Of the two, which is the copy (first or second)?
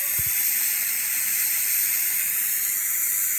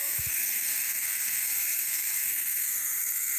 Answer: second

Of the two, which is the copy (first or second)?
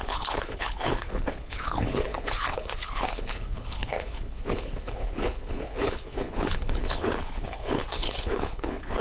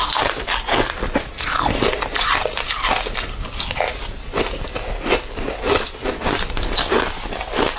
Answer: first